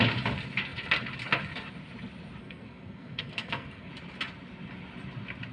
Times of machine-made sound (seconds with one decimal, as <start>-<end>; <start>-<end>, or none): 2.4-3.9